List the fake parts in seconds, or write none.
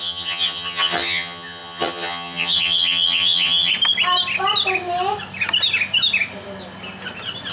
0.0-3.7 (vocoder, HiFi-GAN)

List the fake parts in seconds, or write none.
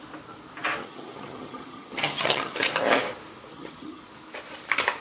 0.8-2.7 (vocoder, HiFi-GAN); 3.5-4.0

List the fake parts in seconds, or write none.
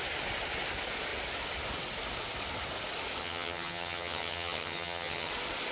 3.2-5.3 (vocoder, HiFi-GAN)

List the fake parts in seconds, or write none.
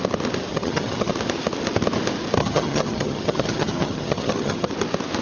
0.5-1.1 (vocoder, HiFi-GAN); 2.4-4.7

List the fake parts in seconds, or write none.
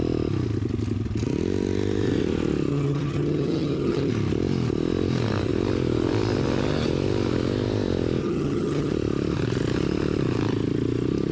2.7-4.1 (vocoder, HiFi-GAN); 8.2-8.9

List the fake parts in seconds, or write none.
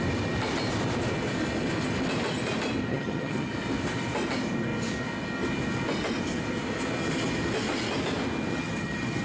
2.9-3.5 (vocoder, HiFi-GAN); 8.5-9.2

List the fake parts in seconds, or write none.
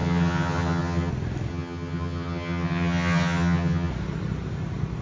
0.0-1.1 (vocoder, HiFi-GAN); 1.5-3.9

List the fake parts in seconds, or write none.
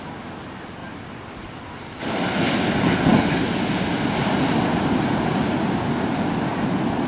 none